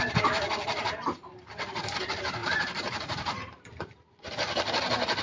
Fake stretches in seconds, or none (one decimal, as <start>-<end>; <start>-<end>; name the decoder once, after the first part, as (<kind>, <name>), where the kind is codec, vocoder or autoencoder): 2.4-4.3 (vocoder, BigVGAN v2)